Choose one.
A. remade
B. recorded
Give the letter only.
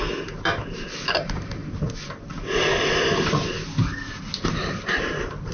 B